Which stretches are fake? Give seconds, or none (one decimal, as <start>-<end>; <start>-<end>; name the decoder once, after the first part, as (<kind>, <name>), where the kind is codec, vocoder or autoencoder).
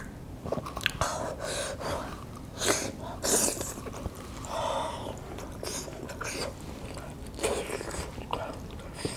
1.1-4.3 (vocoder, BigVGAN v2)